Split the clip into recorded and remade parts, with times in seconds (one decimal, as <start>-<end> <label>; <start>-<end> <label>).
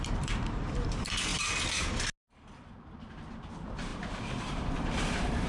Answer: 0.0-1.3 remade; 1.3-3.5 recorded; 3.5-5.5 remade